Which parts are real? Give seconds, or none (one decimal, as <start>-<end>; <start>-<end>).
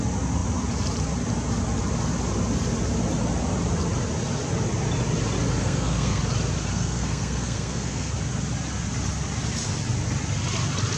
0.0-5.6; 6.2-6.7; 8.1-11.0